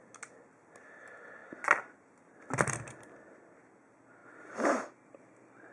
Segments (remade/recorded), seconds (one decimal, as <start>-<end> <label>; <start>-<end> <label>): 0.0-5.7 recorded